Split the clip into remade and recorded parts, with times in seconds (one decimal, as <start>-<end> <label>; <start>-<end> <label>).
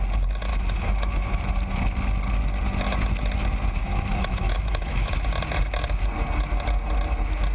0.0-0.5 recorded; 0.5-1.4 remade; 1.4-3.8 recorded; 3.8-5.1 remade; 5.1-7.5 recorded